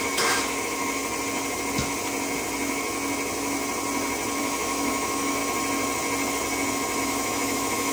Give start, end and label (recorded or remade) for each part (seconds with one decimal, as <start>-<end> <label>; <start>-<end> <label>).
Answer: 0.0-1.0 remade; 1.0-4.4 recorded; 4.4-5.4 remade; 5.4-7.0 recorded; 7.0-7.9 remade